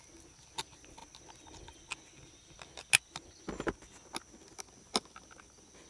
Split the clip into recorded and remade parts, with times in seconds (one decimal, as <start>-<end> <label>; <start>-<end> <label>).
0.0-1.0 remade; 1.0-4.5 recorded; 4.5-5.9 remade